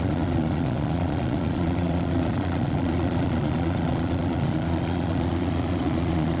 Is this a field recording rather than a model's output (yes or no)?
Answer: no